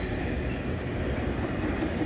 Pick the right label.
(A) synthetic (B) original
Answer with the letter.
B